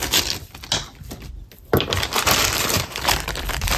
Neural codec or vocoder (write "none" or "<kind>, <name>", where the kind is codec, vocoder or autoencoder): vocoder, BigVGAN v2